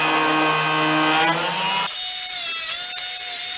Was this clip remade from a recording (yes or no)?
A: no